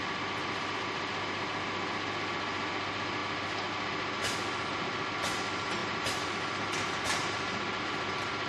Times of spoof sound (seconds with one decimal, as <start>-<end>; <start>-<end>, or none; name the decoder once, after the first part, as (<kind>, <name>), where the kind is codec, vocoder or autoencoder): 5.8-8.5 (vocoder, BigVGAN v2)